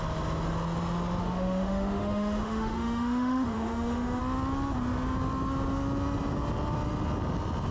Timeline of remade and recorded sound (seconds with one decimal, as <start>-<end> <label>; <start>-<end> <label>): 0.0-1.2 recorded; 1.2-4.2 remade; 4.2-7.7 recorded